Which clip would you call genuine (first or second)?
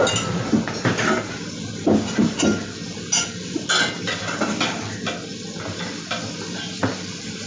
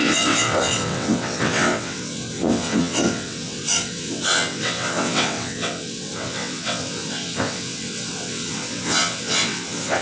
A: first